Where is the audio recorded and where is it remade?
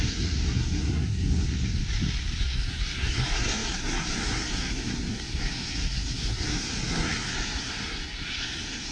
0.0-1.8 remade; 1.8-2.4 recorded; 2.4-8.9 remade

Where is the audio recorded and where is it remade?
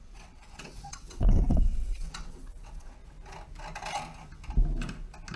0.0-3.0 remade; 3.0-5.4 recorded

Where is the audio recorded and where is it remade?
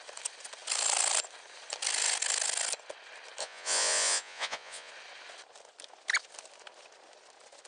0.0-3.4 recorded; 3.4-4.9 remade; 4.9-7.7 recorded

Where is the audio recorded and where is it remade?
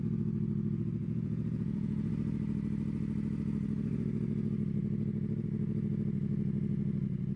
0.0-1.0 recorded; 1.0-2.1 remade; 2.1-7.4 recorded